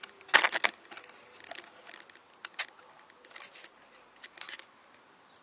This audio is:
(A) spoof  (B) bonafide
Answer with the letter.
B